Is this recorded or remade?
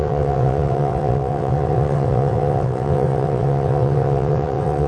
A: remade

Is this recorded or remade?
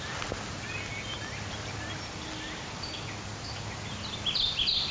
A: recorded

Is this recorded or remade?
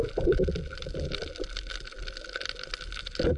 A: recorded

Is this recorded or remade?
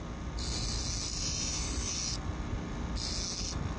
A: recorded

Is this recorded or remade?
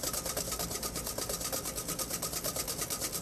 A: recorded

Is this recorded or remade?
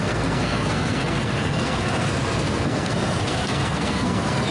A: remade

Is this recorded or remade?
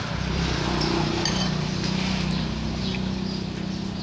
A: recorded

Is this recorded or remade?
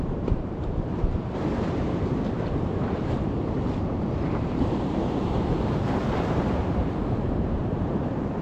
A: remade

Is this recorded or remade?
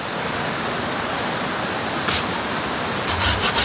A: recorded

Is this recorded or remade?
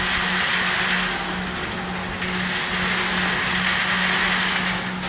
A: recorded